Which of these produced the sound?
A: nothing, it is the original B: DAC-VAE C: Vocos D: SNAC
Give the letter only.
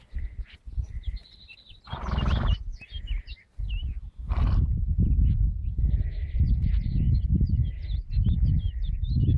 A